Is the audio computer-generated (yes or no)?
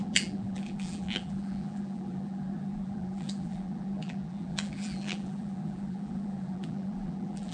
yes